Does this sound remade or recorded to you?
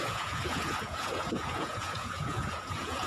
remade